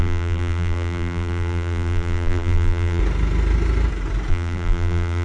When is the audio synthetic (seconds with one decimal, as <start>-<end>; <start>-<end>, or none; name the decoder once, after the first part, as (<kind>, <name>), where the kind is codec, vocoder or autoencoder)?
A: 0.0-3.0 (vocoder, BigVGAN v2); 4.3-5.2